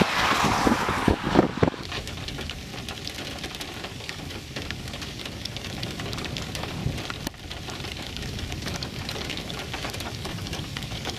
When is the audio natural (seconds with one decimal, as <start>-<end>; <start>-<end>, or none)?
2.7-3.8; 6.8-7.9